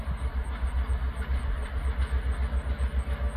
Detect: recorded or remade recorded